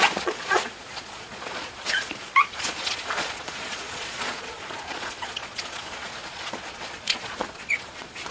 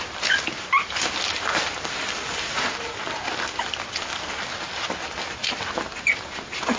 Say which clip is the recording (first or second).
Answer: second